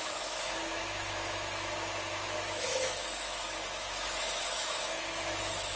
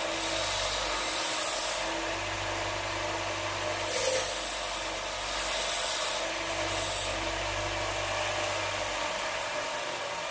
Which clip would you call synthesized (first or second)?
first